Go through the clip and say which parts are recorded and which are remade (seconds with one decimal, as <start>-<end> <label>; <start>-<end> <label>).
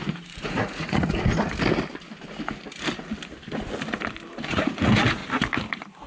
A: 0.0-1.3 remade; 1.3-4.5 recorded; 4.5-5.2 remade; 5.2-6.1 recorded